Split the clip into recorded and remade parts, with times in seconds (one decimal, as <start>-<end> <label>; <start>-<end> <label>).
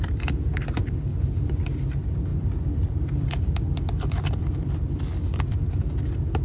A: 0.0-6.4 remade